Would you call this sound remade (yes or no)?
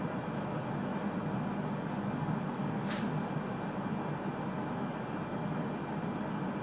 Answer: no